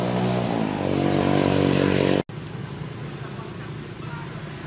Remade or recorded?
recorded